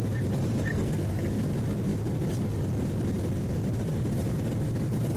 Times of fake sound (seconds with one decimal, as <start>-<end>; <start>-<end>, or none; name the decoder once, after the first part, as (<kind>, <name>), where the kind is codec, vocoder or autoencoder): 0.7-1.4 (codec, SNAC)